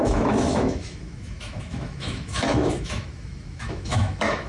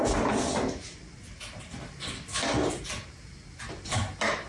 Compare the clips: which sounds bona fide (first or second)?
second